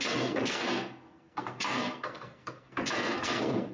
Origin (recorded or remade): remade